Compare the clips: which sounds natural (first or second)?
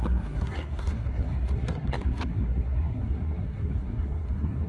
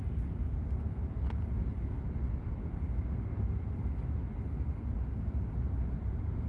second